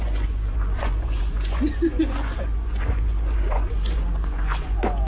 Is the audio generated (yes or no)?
yes